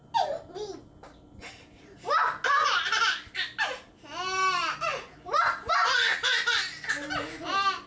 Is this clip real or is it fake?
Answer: real